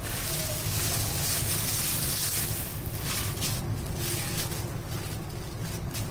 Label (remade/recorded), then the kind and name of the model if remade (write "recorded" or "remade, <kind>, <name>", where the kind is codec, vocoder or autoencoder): recorded